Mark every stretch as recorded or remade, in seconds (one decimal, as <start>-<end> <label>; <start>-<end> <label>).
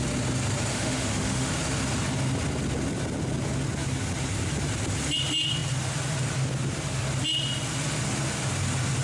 0.0-0.7 recorded; 0.7-1.5 remade; 1.5-9.0 recorded